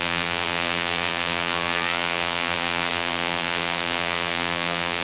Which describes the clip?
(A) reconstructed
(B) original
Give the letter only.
A